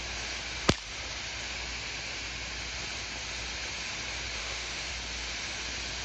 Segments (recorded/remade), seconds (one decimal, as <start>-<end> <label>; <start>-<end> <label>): 0.0-4.4 recorded; 4.4-4.9 remade; 4.9-6.0 recorded